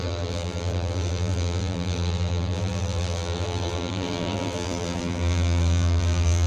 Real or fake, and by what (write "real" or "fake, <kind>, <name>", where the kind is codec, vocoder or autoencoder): fake, vocoder, BigVGAN v2